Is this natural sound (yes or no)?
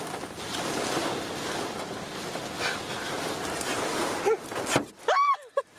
yes